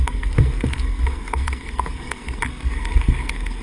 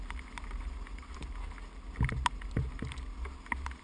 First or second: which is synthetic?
first